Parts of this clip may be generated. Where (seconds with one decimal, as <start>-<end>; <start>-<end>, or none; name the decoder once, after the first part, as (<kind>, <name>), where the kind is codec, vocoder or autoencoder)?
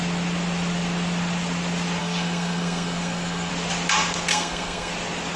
2.0-3.5 (codec, SNAC); 4.3-4.9